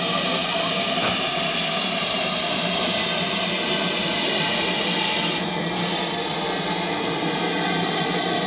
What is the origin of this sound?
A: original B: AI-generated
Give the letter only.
A